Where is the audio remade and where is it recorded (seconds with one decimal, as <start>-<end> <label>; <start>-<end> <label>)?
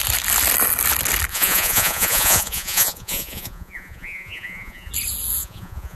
0.0-1.3 recorded; 1.3-4.9 remade; 4.9-5.4 recorded; 5.4-6.0 remade